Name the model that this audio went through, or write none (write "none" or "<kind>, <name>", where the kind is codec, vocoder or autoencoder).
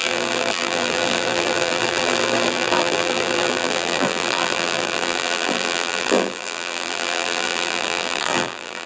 vocoder, BigVGAN v2